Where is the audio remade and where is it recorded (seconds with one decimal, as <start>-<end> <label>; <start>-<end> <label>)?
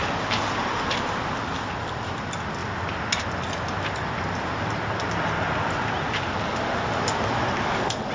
0.0-1.2 remade; 1.2-8.1 recorded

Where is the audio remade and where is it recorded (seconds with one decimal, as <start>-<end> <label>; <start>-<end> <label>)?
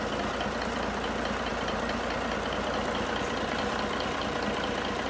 0.0-5.1 recorded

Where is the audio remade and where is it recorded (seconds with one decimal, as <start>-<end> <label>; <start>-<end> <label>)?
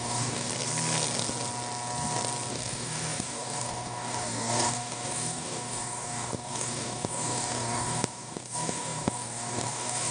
0.0-0.5 remade; 0.5-2.5 recorded; 2.5-10.1 remade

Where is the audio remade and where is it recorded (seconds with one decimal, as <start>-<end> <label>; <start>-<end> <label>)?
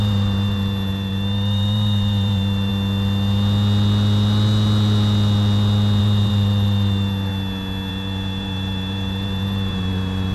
0.0-2.7 remade; 2.7-6.0 recorded; 6.0-7.3 remade; 7.3-7.9 recorded; 7.9-10.3 remade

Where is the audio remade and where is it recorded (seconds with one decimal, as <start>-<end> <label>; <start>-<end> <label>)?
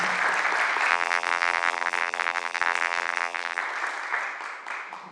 0.0-0.9 recorded; 0.9-3.6 remade; 3.6-5.1 recorded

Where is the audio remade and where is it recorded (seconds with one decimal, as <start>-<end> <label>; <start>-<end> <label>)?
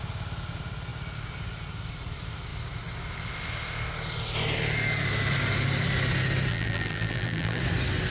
0.0-6.5 recorded; 6.5-7.6 remade; 7.6-8.1 recorded